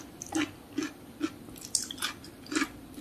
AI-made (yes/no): no